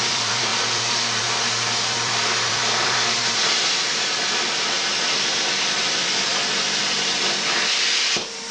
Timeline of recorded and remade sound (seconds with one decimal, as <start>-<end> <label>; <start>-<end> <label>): 0.0-6.3 remade; 6.3-6.8 recorded; 6.8-8.5 remade